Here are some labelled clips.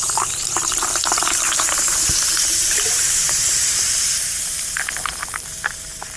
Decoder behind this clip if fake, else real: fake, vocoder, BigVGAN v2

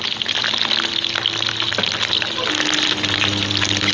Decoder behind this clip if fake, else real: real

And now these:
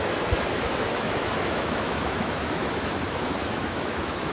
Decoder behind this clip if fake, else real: fake, autoencoder, DAC-VAE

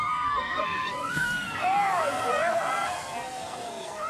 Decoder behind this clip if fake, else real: fake, codec, SNAC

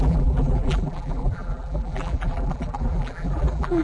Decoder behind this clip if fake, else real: fake, vocoder, BigVGAN v2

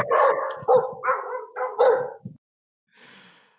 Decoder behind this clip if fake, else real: real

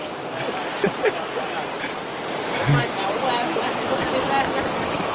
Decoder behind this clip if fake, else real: real